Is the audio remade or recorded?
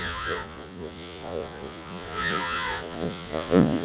remade